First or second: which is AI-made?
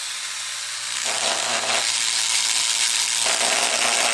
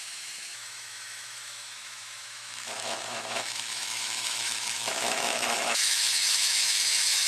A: second